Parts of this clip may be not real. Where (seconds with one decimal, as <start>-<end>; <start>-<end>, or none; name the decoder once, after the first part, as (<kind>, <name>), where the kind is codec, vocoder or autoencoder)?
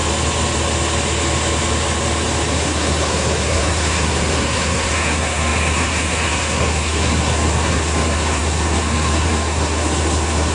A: 2.5-10.5 (codec, SNAC)